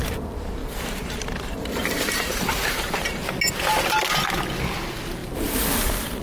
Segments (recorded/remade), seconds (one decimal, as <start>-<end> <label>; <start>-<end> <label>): 0.0-0.6 recorded; 0.6-3.3 remade; 3.3-5.2 recorded; 5.2-6.2 remade